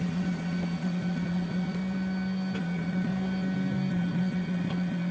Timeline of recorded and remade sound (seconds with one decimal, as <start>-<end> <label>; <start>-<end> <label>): 0.0-1.8 remade; 1.8-2.6 recorded; 2.6-3.1 remade; 3.1-3.9 recorded; 3.9-5.1 remade